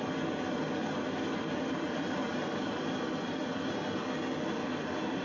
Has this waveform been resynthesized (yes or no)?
no